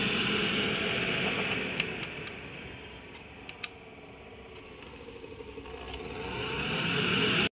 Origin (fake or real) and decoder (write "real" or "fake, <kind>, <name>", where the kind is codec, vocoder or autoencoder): real